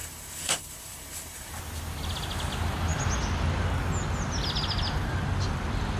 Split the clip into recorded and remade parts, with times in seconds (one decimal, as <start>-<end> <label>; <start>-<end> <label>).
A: 0.0-1.6 remade; 1.6-6.0 recorded